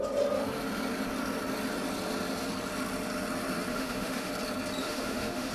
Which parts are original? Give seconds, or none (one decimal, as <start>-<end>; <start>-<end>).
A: 0.0-3.7; 4.3-4.8